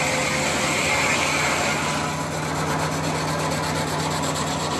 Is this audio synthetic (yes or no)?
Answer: no